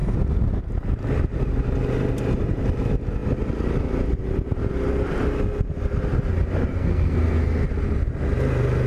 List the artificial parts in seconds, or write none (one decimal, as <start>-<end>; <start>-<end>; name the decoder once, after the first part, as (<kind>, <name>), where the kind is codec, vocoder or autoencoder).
6.7-7.7 (codec, SNAC)